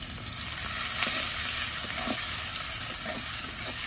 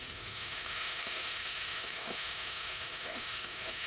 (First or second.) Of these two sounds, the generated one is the second